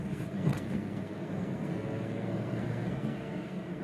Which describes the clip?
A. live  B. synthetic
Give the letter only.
B